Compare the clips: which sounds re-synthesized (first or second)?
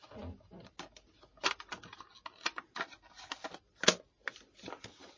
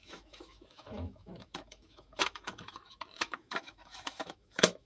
second